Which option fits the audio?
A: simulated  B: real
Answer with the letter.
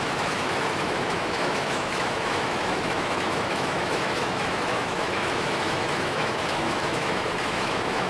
A